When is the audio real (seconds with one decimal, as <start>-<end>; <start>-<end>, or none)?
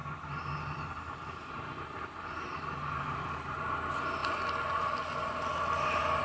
3.7-6.2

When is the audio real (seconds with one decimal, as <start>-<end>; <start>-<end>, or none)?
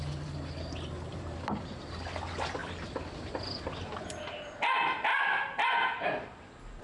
0.0-1.1; 2.2-2.6; 3.7-6.8